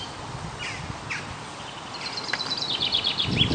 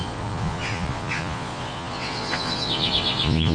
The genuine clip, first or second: first